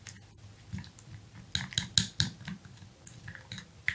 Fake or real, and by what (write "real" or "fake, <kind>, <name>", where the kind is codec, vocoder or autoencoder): real